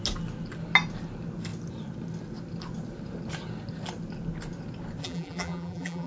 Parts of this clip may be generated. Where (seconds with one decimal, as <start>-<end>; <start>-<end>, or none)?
5.0-6.1